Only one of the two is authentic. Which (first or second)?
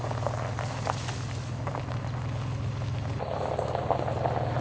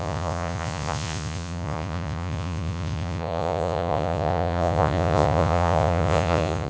first